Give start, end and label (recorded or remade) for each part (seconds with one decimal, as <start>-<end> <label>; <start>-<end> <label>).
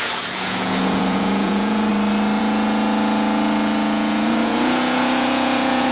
0.0-1.9 remade; 1.9-2.4 recorded; 2.4-5.9 remade